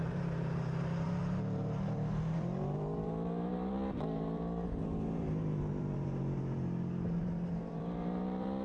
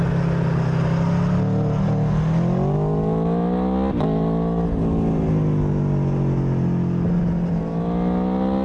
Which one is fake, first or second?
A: first